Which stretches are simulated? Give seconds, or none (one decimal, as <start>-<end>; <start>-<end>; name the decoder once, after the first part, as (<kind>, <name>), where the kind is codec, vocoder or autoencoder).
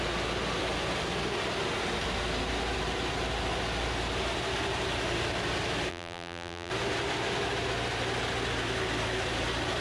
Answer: 5.9-6.7 (vocoder, BigVGAN v2)